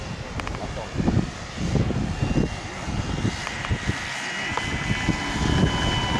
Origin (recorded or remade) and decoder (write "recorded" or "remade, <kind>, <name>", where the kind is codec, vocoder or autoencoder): recorded